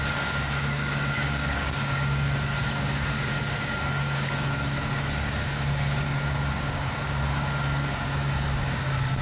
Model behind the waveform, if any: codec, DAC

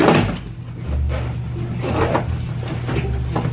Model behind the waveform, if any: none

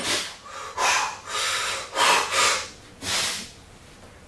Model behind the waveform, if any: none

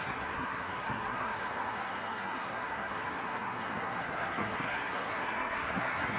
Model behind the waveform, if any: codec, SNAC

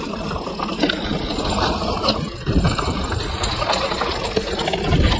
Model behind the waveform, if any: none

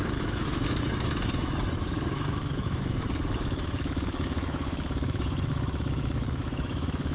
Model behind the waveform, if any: autoencoder, DAC-VAE